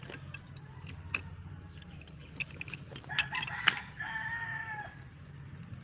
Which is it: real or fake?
real